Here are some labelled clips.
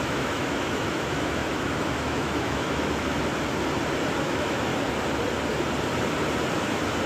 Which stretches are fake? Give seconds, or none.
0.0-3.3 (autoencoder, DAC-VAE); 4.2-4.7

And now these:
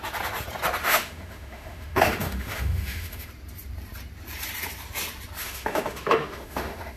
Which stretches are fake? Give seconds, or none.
0.8-3.3 (autoencoder, DAC-VAE); 5.4-7.0

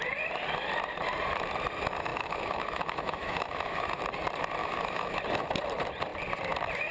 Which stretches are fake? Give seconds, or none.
2.1-4.0 (autoencoder, DAC-VAE); 4.6-5.2

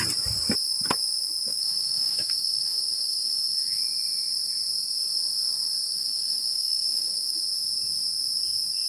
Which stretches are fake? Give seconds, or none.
1.5-3.8 (autoencoder, DAC-VAE); 5.9-7.4

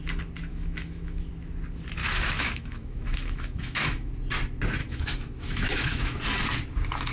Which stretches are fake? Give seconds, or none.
0.5-1.3 (autoencoder, DAC-VAE); 2.0-4.1; 4.8-6.2

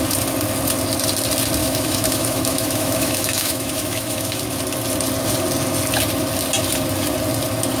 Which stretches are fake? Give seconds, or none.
1.6-4.4 (autoencoder, DAC-VAE)